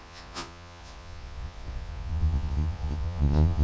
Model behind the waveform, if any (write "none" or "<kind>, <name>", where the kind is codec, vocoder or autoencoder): vocoder, Vocos